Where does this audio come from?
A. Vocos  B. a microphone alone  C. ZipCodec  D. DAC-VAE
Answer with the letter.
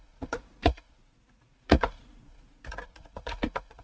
A